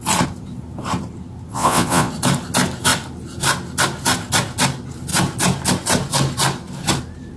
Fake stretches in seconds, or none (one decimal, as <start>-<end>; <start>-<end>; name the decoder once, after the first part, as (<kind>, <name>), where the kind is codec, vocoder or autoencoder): 1.5-2.1 (vocoder, Vocos)

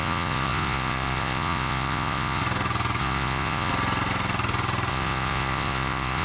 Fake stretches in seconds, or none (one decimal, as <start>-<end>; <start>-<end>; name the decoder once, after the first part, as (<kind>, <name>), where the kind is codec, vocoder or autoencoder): 0.0-2.4 (vocoder, Vocos); 3.0-3.7; 4.9-6.2

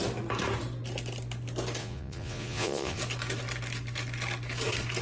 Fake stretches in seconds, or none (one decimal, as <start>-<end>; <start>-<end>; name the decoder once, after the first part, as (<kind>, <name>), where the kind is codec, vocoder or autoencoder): 1.8-3.0 (vocoder, Vocos)